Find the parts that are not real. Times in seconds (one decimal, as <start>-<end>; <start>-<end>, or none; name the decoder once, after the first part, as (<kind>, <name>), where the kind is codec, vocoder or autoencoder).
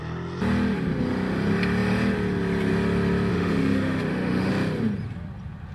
3.3-4.5 (autoencoder, DAC-VAE)